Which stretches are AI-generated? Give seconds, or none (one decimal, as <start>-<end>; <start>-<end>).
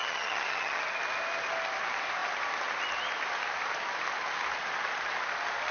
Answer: 0.0-0.8